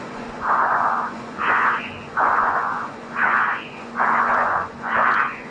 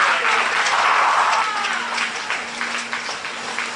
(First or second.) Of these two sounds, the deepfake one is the first